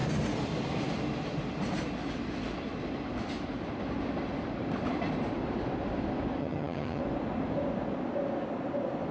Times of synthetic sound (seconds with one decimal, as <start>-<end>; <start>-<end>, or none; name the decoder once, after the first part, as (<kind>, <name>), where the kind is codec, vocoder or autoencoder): 6.4-7.0 (vocoder, HiFi-GAN)